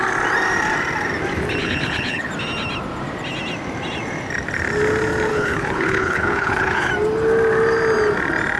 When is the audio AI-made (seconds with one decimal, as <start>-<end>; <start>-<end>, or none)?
1.6-2.3; 5.3-6.9